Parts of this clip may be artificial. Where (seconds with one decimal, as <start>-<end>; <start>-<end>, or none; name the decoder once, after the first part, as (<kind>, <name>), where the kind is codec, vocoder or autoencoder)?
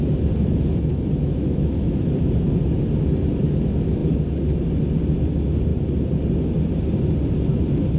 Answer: 0.9-2.0 (autoencoder, DAC-VAE)